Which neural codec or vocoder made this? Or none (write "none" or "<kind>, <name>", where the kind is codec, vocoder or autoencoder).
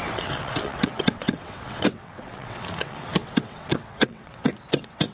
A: vocoder, WaveNeXt